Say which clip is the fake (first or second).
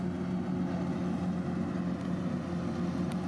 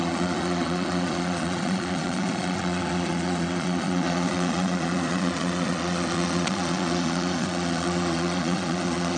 second